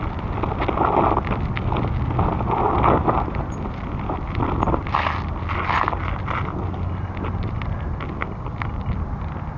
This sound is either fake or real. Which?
real